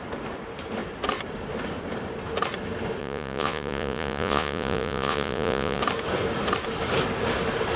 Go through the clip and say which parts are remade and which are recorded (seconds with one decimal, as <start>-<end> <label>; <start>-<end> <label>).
0.0-3.0 recorded; 3.0-5.8 remade; 5.8-7.8 recorded